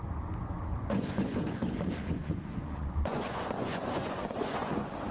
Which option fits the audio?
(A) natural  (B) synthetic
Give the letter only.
B